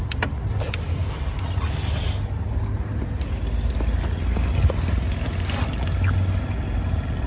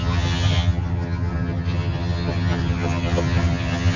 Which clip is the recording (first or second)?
first